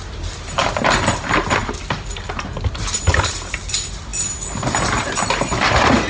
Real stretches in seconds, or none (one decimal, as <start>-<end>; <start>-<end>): 0.0-6.1